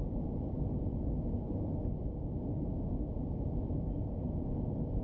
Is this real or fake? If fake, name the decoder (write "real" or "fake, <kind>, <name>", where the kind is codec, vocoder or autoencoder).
real